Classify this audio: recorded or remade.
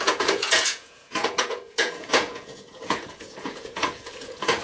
remade